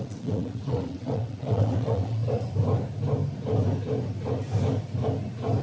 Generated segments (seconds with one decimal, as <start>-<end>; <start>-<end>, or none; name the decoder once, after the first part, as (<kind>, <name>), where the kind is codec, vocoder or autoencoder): 0.0-2.2 (vocoder, WaveNeXt)